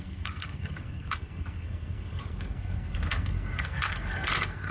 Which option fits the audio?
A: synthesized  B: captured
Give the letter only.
A